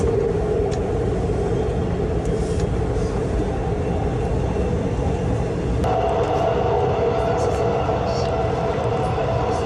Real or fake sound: real